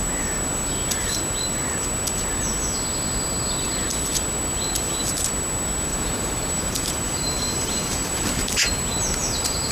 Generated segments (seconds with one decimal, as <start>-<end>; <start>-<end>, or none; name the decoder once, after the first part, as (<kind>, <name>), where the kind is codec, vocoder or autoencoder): 5.9-9.7 (vocoder, BigVGAN v2)